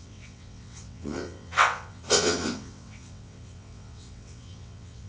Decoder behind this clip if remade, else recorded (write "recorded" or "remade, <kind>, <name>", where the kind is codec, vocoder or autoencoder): remade, vocoder, WaveNeXt